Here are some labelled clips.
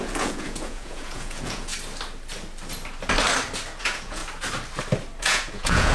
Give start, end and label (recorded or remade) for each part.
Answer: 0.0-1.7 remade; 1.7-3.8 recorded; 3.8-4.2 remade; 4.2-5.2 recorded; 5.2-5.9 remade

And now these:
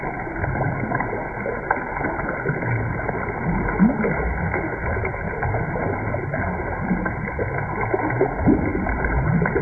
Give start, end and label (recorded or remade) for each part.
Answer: 0.0-8.7 recorded; 8.7-9.6 remade

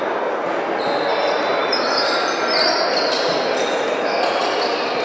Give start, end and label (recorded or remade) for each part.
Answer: 0.0-5.0 recorded

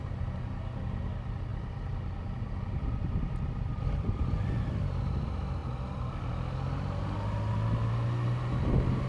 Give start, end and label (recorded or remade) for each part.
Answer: 0.0-1.5 recorded; 1.5-5.0 remade; 5.0-5.6 recorded; 5.6-6.1 remade; 6.1-9.1 recorded

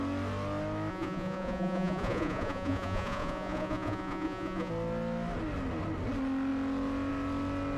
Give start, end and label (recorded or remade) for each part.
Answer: 0.0-0.9 recorded; 0.9-4.7 remade; 4.7-7.8 recorded